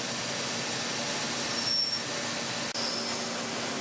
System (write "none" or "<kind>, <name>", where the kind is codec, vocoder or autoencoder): none